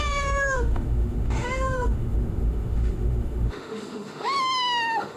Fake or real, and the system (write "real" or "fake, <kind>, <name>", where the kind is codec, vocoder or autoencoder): fake, autoencoder, DAC-VAE